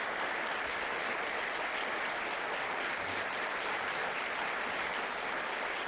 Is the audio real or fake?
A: real